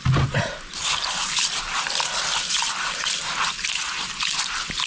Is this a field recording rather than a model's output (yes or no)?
yes